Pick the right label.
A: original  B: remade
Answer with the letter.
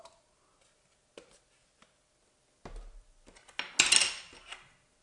A